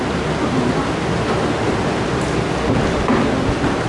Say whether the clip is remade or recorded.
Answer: recorded